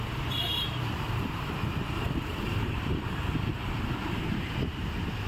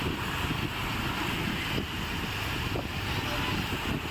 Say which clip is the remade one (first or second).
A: first